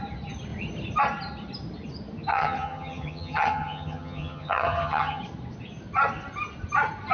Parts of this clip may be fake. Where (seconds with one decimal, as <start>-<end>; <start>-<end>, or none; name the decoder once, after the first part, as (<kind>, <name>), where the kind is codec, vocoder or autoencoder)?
2.3-5.2 (vocoder, HiFi-GAN)